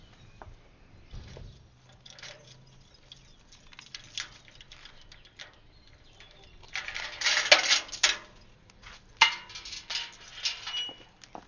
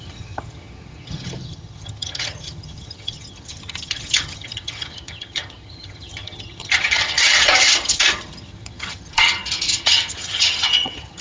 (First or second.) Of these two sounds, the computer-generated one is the second